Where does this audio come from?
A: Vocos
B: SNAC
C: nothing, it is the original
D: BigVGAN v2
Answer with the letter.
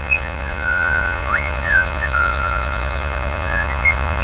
A